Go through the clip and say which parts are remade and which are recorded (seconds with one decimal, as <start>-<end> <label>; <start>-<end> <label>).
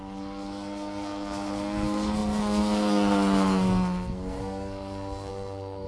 0.0-5.9 remade